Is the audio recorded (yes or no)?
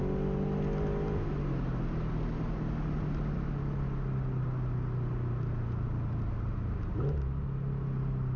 yes